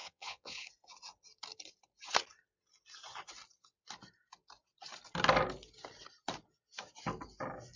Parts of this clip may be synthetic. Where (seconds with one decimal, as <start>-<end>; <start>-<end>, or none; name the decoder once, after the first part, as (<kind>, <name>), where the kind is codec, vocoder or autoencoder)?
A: 0.0-0.7 (vocoder, Vocos)